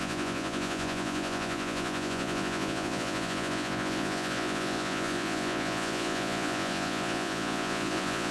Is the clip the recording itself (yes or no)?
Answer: no